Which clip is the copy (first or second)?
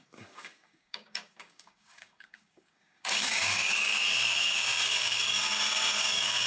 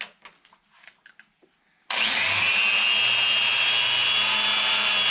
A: first